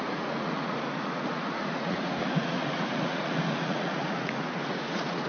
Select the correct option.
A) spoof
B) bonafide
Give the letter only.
A